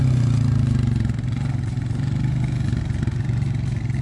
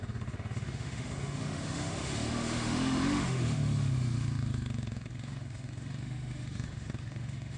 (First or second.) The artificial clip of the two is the second